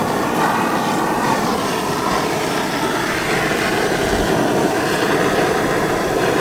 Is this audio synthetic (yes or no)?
yes